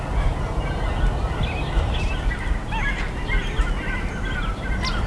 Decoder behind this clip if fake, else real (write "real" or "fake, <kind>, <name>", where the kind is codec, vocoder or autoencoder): real